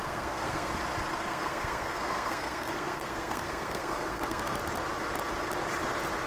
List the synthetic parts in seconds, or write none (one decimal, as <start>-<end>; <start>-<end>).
0.0-0.7; 1.3-4.6